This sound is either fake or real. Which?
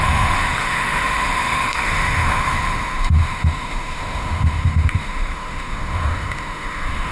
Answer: fake